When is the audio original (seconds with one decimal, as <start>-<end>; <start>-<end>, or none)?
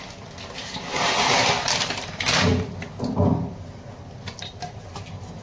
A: 0.0-0.9; 1.7-5.4